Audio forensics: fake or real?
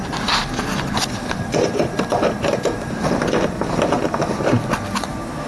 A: real